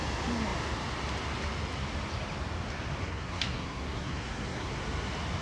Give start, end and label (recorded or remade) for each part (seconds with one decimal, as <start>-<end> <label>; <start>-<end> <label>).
0.0-3.0 recorded; 3.0-4.7 remade; 4.7-5.4 recorded